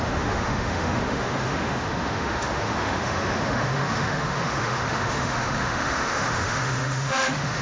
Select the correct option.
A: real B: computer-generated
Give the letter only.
B